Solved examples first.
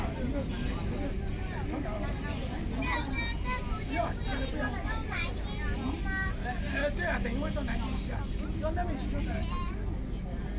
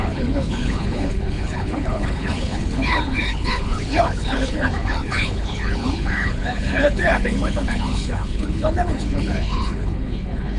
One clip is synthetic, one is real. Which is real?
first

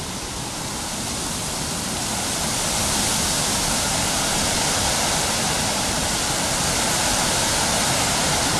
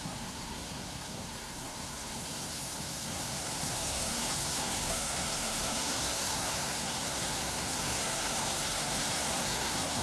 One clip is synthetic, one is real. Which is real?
first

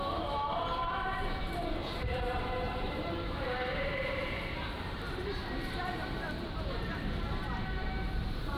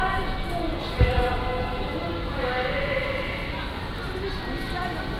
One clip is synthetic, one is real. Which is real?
second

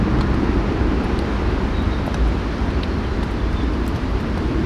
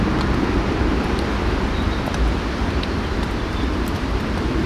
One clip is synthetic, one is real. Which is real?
first